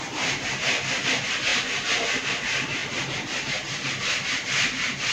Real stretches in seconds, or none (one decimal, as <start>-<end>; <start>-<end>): 0.0-2.8; 4.0-5.1